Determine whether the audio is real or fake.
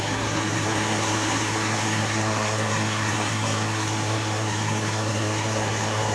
fake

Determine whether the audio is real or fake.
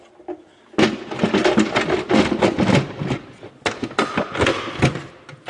real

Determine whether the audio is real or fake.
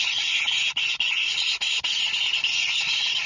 real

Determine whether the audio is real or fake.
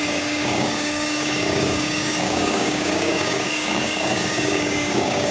fake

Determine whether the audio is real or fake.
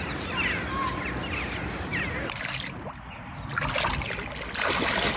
real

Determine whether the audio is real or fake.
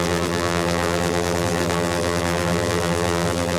fake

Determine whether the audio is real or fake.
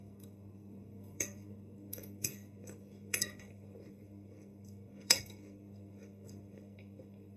fake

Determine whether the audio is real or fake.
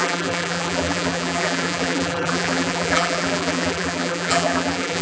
fake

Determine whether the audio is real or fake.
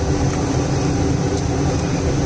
real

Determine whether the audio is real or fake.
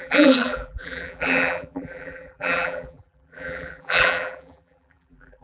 fake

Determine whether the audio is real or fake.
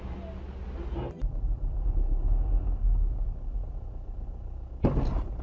real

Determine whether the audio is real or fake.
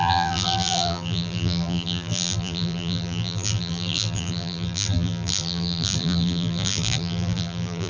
fake